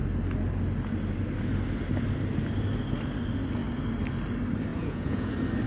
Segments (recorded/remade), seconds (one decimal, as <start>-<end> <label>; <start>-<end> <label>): 0.0-4.7 recorded; 4.7-5.3 remade; 5.3-5.7 recorded